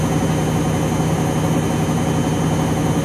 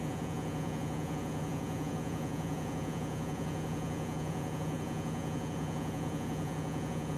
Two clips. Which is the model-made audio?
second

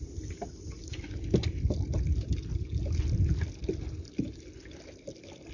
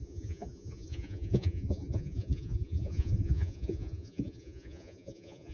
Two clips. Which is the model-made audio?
second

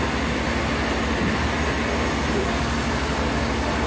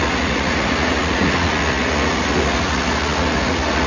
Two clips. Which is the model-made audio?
second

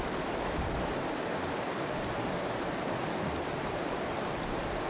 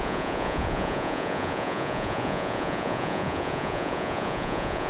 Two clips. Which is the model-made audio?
second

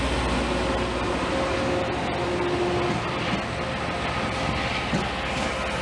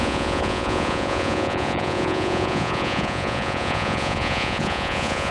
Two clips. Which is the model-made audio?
second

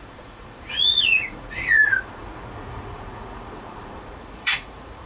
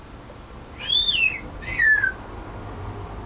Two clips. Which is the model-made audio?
first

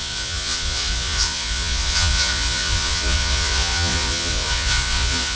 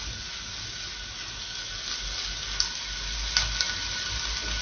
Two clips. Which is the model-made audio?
first